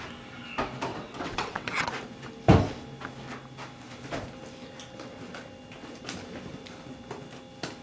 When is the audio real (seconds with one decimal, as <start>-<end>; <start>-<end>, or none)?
0.0-0.9; 1.9-7.8